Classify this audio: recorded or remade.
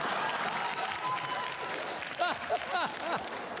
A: recorded